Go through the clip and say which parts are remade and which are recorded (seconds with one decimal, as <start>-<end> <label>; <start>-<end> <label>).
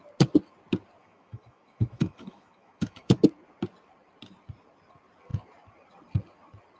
0.0-1.0 recorded; 1.0-3.2 remade; 3.2-6.8 recorded